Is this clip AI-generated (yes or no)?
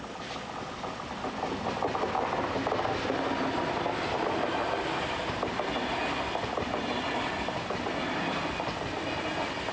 no